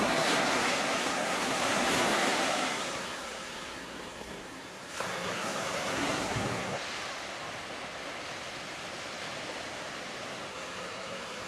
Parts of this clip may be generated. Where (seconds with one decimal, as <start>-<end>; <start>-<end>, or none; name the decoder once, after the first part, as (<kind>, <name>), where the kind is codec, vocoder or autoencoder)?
0.0-6.8 (codec, SNAC); 10.5-11.5